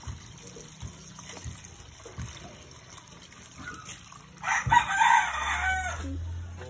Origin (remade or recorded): recorded